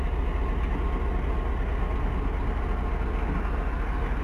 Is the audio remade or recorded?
recorded